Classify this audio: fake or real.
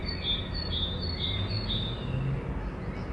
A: real